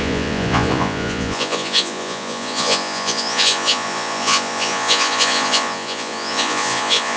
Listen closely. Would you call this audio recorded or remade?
remade